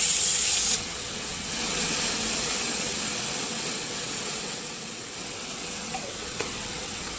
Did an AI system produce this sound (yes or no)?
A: yes